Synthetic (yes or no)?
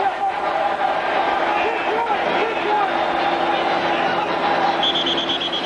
no